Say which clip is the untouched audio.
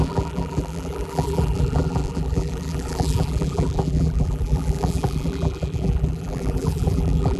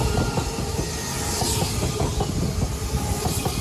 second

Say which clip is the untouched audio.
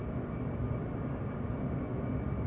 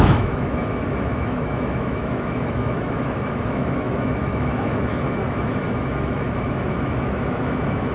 first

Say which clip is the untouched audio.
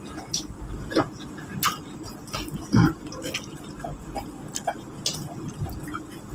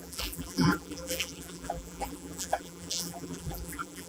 first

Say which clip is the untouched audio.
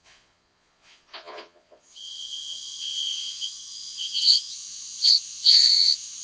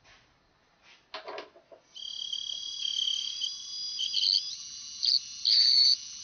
second